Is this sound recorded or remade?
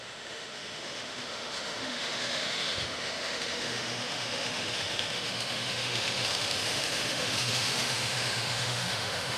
remade